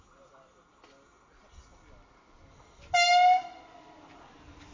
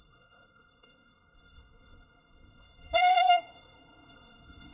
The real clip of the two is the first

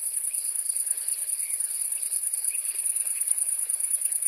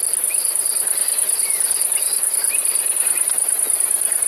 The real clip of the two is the second